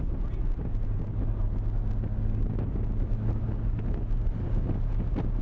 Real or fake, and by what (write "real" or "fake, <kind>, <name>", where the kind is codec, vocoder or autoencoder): real